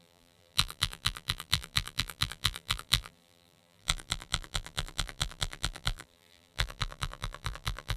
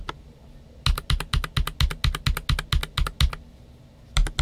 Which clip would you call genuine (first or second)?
second